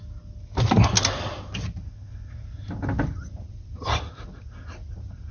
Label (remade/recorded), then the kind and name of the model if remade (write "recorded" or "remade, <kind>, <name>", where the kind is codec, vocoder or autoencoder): recorded